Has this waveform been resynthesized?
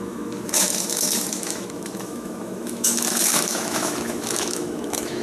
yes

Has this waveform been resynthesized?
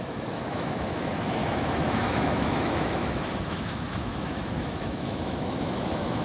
yes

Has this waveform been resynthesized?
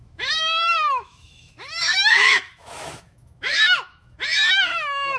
yes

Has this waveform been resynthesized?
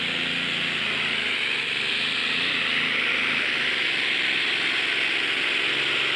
no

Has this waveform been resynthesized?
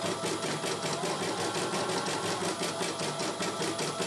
no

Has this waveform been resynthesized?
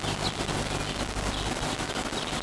no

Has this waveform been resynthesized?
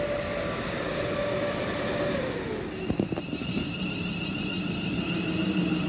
no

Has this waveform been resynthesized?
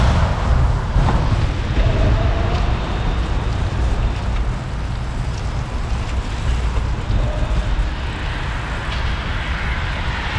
no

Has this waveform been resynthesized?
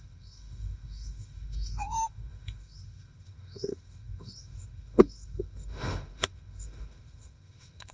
yes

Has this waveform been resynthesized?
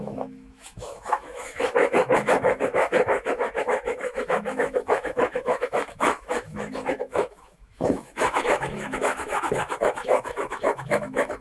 yes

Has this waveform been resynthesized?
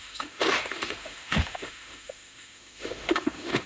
yes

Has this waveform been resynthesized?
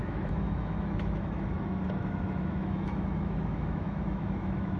yes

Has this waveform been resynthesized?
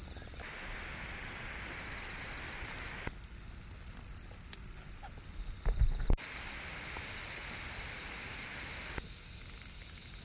no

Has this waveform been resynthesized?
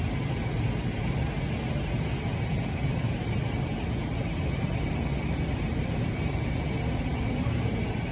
no